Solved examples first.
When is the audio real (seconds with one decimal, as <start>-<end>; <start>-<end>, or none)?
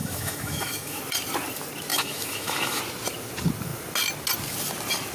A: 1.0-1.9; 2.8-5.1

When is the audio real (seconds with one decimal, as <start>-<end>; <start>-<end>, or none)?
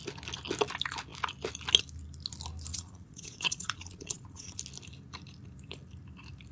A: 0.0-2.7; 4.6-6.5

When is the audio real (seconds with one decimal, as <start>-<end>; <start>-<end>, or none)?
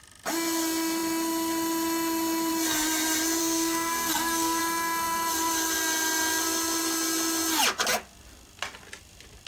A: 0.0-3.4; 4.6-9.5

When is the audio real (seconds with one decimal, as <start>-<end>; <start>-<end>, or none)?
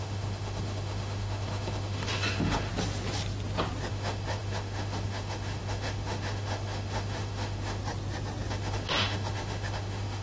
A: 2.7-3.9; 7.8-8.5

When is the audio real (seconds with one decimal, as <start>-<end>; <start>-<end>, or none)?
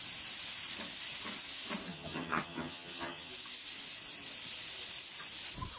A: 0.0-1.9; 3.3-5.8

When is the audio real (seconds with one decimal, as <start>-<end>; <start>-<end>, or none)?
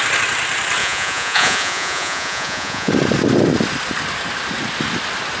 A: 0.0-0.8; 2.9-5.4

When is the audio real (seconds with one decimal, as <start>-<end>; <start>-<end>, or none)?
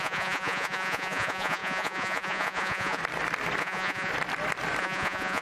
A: 3.0-3.6; 4.1-4.8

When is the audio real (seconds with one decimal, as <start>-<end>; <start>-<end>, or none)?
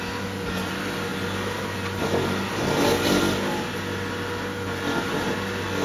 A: 0.0-5.8